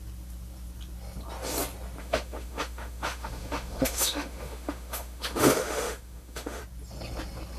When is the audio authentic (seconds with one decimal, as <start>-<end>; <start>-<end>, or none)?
0.0-2.0; 6.6-7.6